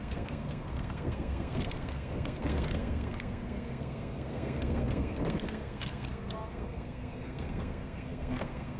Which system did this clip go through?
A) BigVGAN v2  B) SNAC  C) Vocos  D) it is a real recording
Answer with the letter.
B